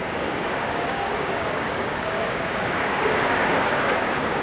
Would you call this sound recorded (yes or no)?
no